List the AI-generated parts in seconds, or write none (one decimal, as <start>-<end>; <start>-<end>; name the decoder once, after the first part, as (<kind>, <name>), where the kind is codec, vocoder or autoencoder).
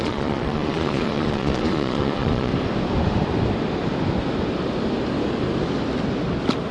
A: 0.0-2.5 (vocoder, Vocos)